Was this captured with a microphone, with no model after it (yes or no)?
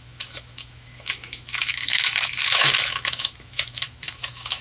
no